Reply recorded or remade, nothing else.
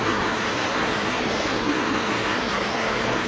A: remade